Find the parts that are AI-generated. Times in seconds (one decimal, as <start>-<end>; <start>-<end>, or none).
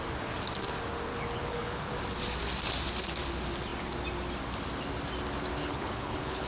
1.1-1.9; 5.6-6.5